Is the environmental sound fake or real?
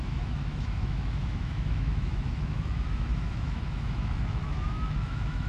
fake